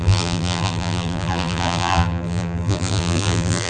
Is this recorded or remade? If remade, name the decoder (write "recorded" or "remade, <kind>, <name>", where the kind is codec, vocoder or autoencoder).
remade, vocoder, BigVGAN v2